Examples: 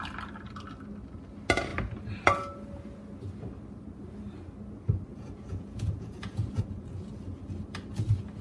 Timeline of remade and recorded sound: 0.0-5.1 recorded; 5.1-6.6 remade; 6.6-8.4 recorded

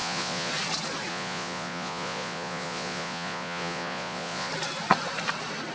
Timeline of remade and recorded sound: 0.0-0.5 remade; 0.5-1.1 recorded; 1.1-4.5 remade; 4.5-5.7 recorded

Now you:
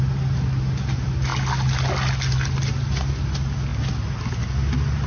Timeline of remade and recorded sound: 0.0-5.1 recorded